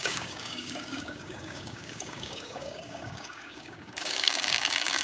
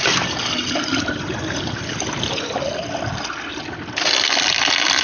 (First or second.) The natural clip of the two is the second